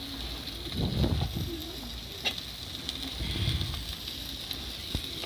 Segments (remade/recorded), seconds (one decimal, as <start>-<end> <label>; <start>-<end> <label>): 0.0-5.3 recorded